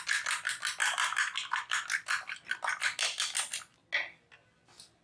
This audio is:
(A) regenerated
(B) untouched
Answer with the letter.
B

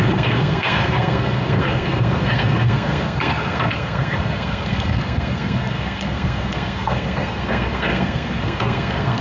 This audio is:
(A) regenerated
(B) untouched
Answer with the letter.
A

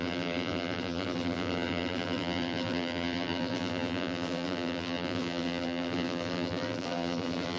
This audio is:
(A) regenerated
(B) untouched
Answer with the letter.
A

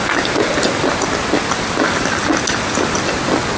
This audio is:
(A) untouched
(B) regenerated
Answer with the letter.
A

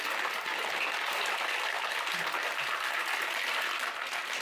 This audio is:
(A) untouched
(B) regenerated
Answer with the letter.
A